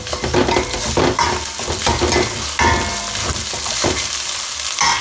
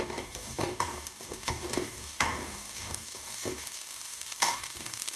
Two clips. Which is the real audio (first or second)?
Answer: first